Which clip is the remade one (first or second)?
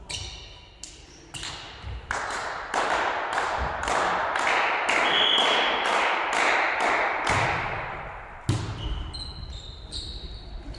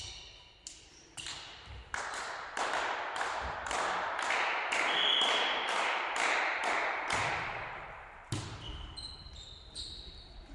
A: second